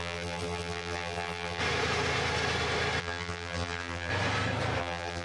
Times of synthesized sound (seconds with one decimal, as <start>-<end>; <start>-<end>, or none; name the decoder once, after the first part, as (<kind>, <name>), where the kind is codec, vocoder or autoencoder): 0.0-1.6 (vocoder, BigVGAN v2); 3.0-4.1; 4.8-5.2